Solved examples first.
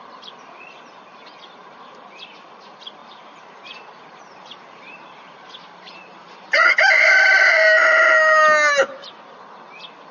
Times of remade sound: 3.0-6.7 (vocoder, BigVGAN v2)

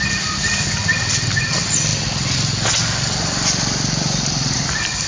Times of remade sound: none